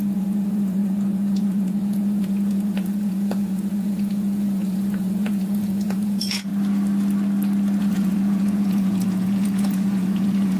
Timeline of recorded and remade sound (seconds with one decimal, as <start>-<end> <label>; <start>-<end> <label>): 0.0-6.5 remade; 6.5-7.8 recorded; 7.8-10.6 remade